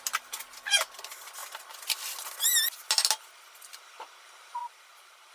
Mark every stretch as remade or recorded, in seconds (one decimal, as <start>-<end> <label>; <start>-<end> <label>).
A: 0.0-4.6 recorded; 4.6-5.3 remade